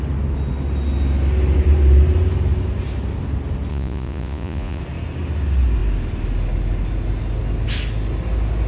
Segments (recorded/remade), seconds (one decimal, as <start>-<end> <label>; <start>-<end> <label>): 0.0-3.7 recorded; 3.7-4.8 remade; 4.8-8.7 recorded